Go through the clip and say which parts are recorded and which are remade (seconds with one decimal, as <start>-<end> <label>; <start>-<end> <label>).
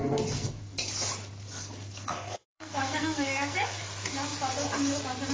0.0-0.6 remade; 0.6-1.6 recorded; 1.6-3.8 remade; 3.8-5.3 recorded